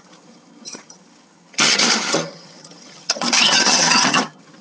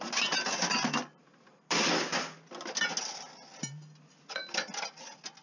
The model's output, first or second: first